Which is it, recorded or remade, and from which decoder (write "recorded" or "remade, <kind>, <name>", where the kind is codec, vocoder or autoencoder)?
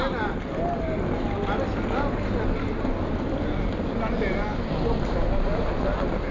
recorded